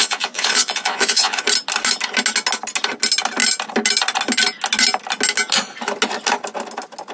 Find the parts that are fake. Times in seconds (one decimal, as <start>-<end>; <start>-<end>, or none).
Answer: 0.0-1.4